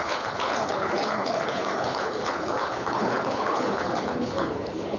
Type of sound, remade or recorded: remade